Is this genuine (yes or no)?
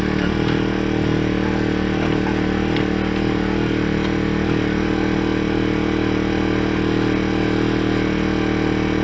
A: yes